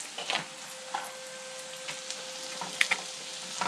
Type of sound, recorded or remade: recorded